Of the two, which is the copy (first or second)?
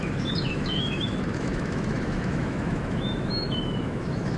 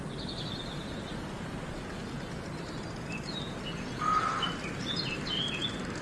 first